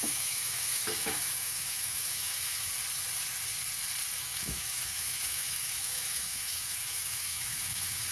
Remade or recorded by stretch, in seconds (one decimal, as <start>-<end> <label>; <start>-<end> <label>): 0.0-2.7 remade; 2.7-4.4 recorded; 4.4-8.1 remade

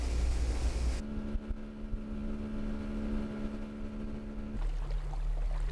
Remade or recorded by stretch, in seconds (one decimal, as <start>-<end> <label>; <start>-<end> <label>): 0.0-5.7 recorded

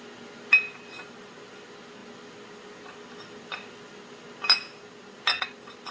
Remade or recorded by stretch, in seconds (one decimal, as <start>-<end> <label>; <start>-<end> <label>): 0.0-5.9 recorded

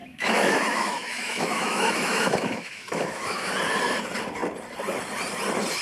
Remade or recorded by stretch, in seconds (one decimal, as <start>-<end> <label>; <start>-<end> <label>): 0.0-3.5 remade; 3.5-5.8 recorded

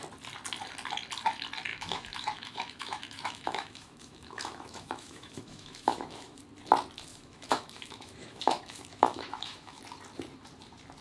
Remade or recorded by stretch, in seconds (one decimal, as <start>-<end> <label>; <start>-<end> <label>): 0.0-1.7 recorded; 1.7-6.4 remade; 6.4-7.1 recorded; 7.1-9.8 remade; 9.8-11.0 recorded

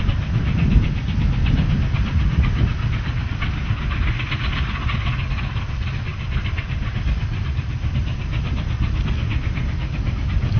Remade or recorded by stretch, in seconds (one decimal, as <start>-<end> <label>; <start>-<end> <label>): 0.0-10.6 recorded